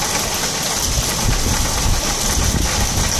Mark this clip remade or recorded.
recorded